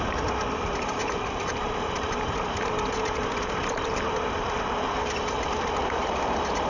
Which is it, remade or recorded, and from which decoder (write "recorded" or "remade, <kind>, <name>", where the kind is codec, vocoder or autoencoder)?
remade, vocoder, BigVGAN v2